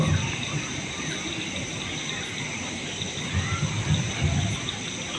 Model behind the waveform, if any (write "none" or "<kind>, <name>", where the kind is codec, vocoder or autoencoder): none